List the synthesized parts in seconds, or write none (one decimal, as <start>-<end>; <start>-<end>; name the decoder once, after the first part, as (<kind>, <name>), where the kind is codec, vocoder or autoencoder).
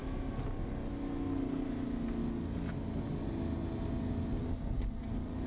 4.4-5.1 (codec, SNAC)